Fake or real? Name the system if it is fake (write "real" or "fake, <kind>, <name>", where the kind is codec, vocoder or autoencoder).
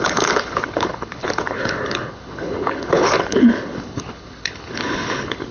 fake, codec, HILCodec